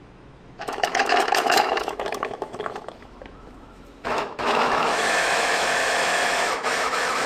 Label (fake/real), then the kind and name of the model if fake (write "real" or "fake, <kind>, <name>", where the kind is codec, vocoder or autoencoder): fake, autoencoder, DAC-VAE